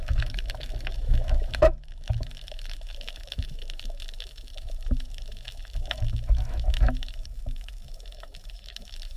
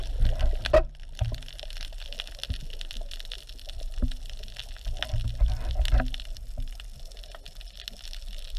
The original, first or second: second